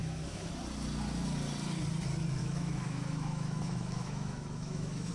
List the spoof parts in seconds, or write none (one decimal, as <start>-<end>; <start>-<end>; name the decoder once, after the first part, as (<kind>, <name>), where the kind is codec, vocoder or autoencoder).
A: 0.0-0.5 (autoencoder, DAC-VAE); 2.4-5.1